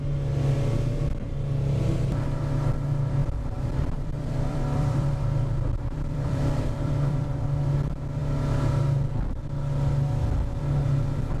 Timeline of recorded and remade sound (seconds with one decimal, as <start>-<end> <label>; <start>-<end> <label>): 0.0-3.2 recorded; 3.2-7.3 remade; 7.3-11.4 recorded